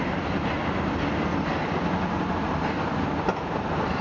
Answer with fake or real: real